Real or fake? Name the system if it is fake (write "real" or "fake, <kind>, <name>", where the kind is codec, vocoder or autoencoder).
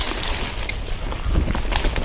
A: real